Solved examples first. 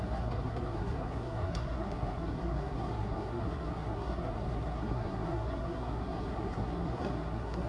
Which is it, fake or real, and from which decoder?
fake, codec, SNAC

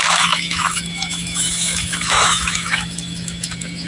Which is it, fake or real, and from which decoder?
fake, autoencoder, DAC-VAE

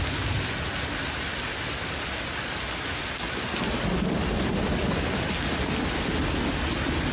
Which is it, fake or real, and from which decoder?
real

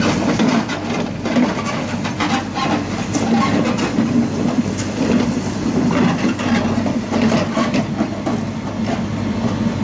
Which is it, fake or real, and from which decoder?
real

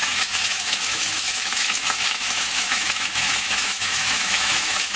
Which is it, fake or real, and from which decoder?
fake, autoencoder, DAC-VAE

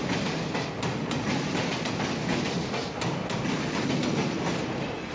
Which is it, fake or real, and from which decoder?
real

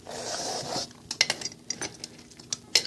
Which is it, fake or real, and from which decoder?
real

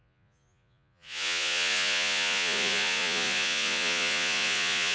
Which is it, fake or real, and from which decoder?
fake, vocoder, Vocos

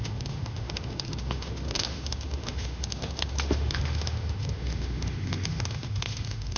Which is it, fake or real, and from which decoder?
fake, autoencoder, DAC-VAE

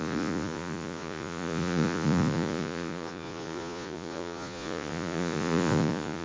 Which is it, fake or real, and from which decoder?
fake, vocoder, Vocos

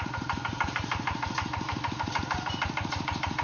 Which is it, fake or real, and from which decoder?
fake, vocoder, BigVGAN v2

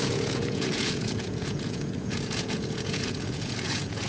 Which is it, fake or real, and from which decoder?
fake, vocoder, Vocos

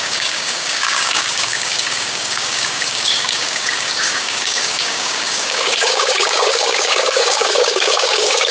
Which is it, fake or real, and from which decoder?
fake, codec, DAC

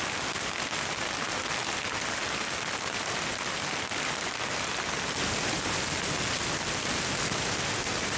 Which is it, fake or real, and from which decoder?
real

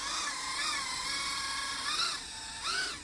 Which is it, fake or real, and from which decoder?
real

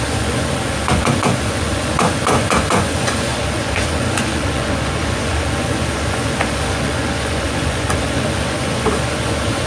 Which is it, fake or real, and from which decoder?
fake, vocoder, Vocos